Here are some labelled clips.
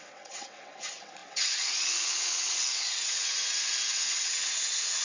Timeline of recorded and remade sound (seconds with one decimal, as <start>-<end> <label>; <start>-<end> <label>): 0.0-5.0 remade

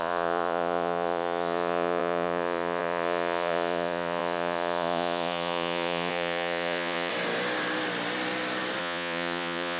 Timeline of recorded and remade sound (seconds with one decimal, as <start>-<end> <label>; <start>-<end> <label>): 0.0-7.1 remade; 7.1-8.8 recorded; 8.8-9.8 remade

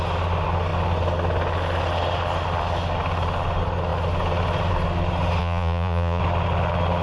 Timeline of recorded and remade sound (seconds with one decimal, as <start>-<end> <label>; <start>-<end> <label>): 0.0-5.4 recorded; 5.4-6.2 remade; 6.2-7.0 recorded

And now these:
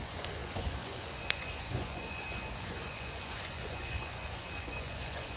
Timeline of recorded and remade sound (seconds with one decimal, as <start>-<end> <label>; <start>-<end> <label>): 0.0-5.4 remade